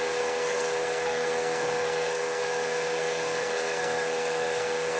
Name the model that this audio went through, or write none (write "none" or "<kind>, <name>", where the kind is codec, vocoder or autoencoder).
codec, SNAC